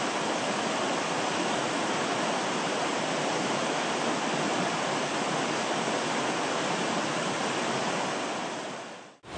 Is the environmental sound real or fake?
real